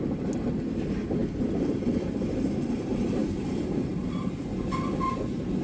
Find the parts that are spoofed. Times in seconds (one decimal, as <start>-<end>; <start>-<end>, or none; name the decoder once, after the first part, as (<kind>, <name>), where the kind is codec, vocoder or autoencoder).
1.2-2.2 (vocoder, BigVGAN v2); 3.2-4.1

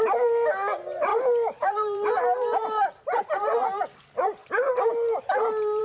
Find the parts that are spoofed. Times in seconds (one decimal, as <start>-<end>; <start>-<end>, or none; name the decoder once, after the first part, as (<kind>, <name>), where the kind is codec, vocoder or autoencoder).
1.1-3.2 (vocoder, BigVGAN v2)

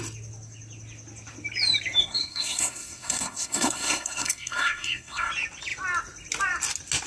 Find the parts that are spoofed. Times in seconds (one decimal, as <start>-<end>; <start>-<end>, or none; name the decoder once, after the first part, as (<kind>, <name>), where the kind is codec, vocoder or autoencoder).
2.0-5.3 (codec, SNAC)